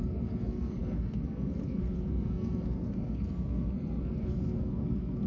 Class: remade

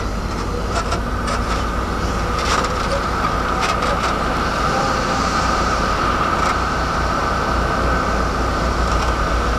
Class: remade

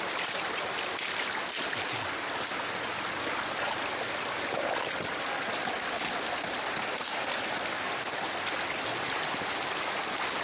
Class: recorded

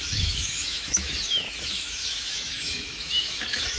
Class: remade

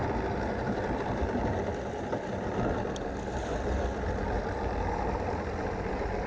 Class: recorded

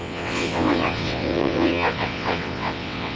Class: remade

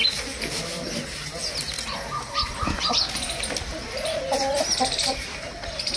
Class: recorded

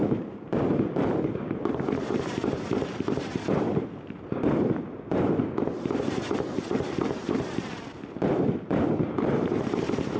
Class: remade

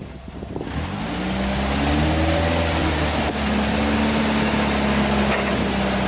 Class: recorded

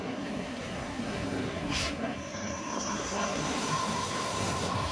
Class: remade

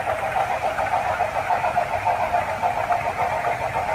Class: recorded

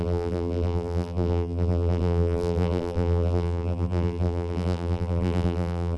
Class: remade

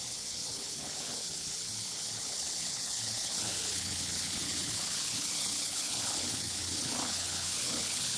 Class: remade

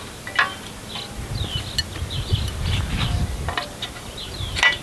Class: recorded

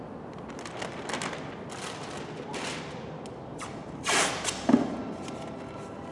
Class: recorded